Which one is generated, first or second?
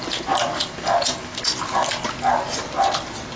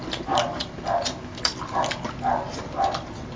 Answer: second